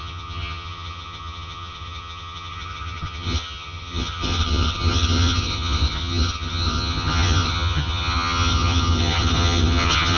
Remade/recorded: remade